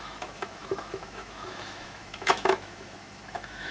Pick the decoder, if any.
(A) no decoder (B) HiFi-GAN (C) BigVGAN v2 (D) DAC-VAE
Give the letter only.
D